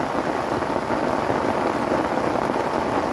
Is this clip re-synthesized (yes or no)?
no